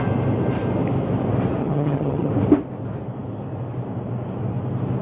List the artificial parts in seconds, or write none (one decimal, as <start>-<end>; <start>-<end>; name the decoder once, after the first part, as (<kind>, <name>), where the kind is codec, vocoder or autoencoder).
1.6-2.3 (vocoder, HiFi-GAN)